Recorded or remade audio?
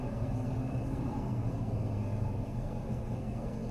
remade